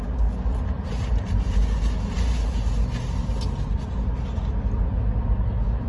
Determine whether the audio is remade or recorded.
recorded